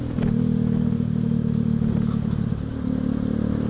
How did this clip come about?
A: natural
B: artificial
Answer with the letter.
A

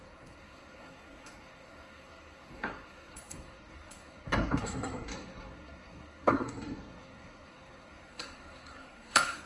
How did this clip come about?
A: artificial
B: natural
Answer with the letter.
A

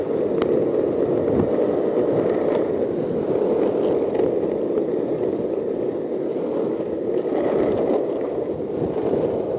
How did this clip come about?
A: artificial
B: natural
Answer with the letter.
B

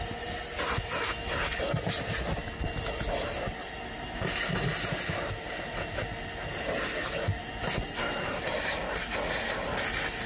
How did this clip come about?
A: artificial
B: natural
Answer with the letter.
B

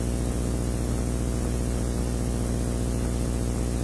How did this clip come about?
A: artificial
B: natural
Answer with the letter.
B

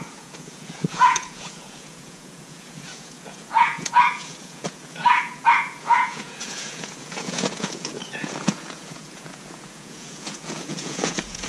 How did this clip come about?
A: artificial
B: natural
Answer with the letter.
A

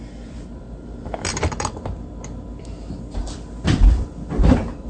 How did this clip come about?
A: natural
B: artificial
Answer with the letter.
B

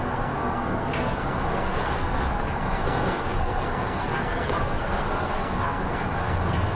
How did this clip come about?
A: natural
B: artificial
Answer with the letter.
B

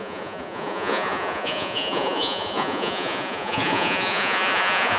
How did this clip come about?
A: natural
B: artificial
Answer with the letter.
B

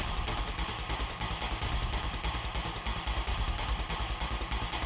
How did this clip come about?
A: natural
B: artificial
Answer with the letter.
A